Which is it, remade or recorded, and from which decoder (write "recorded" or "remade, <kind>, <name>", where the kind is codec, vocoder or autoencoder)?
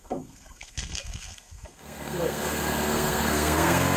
remade, codec, SNAC